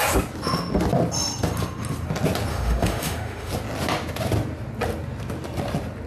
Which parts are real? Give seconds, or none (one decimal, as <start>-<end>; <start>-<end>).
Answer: 0.0-2.5; 3.5-6.1